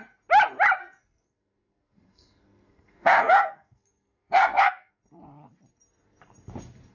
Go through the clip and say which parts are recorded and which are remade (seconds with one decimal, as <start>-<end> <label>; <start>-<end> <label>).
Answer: 0.0-0.8 recorded; 0.8-4.9 remade; 4.9-6.9 recorded